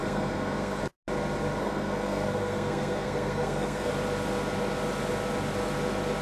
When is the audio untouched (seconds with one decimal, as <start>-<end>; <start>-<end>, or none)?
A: 0.8-1.6; 3.9-6.2